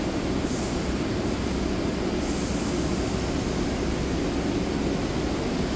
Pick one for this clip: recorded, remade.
recorded